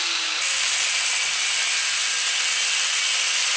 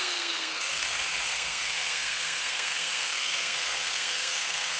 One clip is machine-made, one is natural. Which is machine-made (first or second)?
second